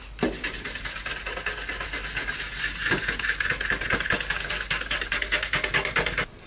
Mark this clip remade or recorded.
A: recorded